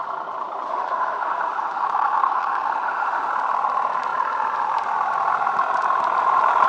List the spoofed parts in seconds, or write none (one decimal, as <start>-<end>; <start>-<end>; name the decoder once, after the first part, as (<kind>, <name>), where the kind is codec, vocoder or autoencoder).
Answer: 0.7-3.3 (autoencoder, DAC-VAE)